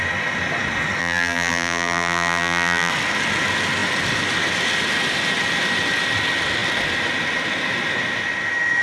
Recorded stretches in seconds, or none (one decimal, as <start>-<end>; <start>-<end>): 0.0-1.0; 2.9-8.8